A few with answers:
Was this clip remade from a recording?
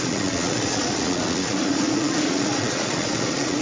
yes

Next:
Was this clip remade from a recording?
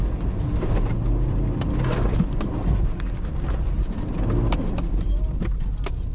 no